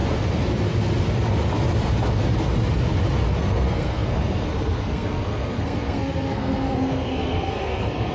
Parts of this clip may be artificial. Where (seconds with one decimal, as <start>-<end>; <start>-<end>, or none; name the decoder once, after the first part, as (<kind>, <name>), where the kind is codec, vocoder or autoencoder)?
3.4-8.1 (codec, SNAC)